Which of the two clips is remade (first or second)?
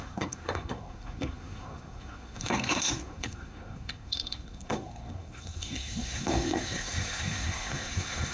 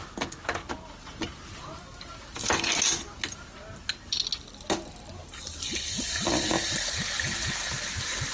first